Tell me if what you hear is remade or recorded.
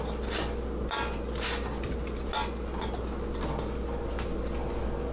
recorded